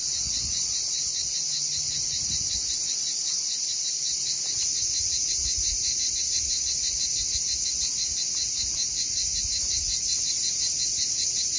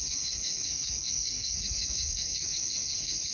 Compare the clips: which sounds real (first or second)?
first